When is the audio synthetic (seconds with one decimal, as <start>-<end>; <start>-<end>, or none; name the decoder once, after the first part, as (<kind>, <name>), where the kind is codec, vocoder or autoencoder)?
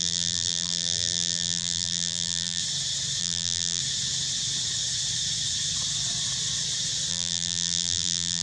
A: 0.0-2.6 (vocoder, BigVGAN v2); 3.2-3.8; 7.1-8.4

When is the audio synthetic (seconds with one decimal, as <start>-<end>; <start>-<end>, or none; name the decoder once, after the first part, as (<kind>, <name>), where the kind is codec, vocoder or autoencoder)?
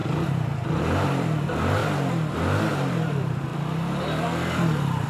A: 0.0-1.8 (vocoder, BigVGAN v2); 2.7-3.5; 4.0-5.1